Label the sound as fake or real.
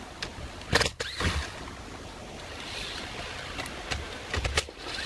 real